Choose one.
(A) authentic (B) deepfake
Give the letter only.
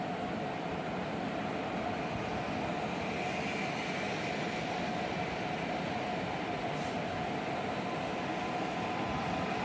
A